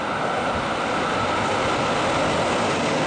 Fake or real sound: real